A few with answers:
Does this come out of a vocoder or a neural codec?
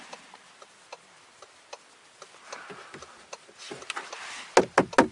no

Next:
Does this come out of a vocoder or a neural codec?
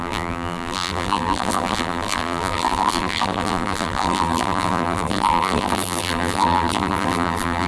yes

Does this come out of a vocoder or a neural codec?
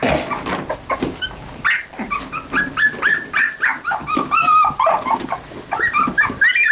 no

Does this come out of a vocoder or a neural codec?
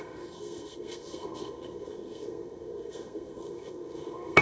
yes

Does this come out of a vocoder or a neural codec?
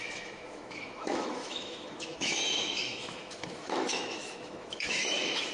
yes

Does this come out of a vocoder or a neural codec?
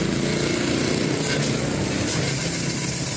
no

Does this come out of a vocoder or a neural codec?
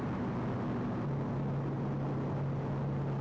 no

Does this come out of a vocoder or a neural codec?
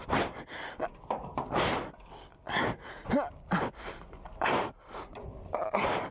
yes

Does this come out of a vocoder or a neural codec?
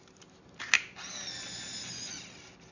no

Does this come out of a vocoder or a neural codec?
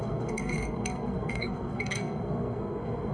yes